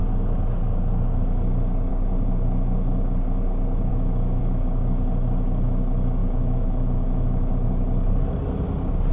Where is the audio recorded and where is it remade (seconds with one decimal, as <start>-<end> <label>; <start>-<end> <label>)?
0.0-3.9 recorded; 3.9-4.4 remade; 4.4-6.2 recorded; 6.2-7.5 remade; 7.5-9.1 recorded